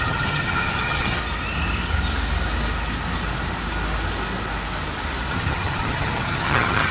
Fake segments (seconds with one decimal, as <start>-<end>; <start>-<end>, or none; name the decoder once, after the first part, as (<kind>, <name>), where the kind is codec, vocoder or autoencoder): 0.0-1.2 (vocoder, HiFi-GAN); 5.3-6.9